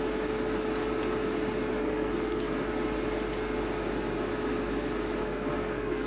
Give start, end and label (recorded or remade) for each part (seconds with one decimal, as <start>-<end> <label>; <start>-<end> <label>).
0.0-1.8 recorded; 1.8-2.7 remade; 2.7-5.2 recorded; 5.2-6.1 remade